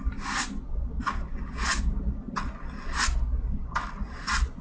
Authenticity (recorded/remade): recorded